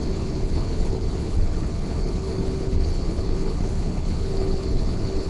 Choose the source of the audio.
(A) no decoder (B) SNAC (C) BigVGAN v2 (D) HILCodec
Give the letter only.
D